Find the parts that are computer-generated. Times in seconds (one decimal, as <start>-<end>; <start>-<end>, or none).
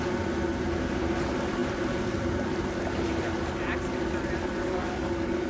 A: 4.6-5.5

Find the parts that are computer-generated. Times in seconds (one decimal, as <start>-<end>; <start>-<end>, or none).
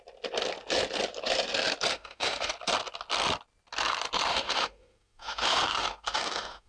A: 1.9-2.5; 4.3-6.7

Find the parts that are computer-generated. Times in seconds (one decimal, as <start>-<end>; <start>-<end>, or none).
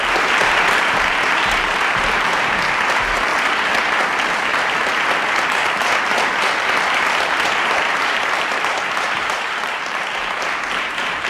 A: 0.0-3.3; 6.9-11.3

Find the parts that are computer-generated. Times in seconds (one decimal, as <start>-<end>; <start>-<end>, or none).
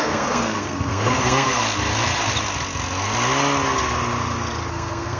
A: 0.0-1.6; 4.7-5.2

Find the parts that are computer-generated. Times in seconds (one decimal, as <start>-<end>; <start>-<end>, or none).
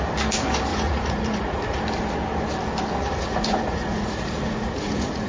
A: 0.7-1.8; 3.0-5.3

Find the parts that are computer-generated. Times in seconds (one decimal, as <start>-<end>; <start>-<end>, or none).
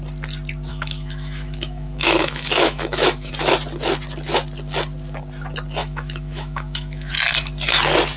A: 0.7-3.3; 5.8-7.1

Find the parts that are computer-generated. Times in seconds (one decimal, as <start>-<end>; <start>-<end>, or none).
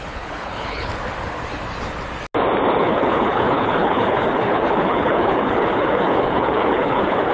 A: 0.0-0.9; 2.8-7.3